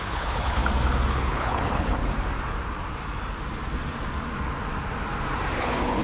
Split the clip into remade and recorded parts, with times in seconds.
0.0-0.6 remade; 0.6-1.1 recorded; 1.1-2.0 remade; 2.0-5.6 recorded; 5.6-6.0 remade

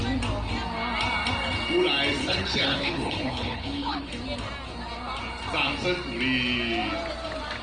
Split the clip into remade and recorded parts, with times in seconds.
0.0-2.2 recorded; 2.2-4.1 remade; 4.1-7.6 recorded

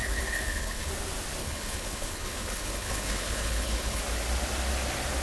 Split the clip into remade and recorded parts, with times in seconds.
0.0-0.9 remade; 0.9-1.4 recorded; 1.4-4.0 remade; 4.0-5.2 recorded